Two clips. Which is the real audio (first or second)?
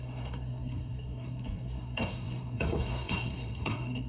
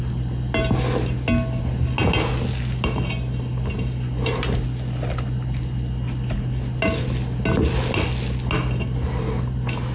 second